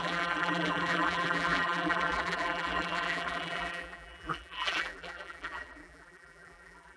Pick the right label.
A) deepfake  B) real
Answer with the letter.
A